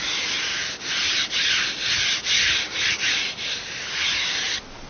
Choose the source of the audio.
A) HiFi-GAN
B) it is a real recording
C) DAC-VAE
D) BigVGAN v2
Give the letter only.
B